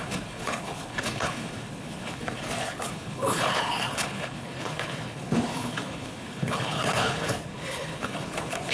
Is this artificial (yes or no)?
yes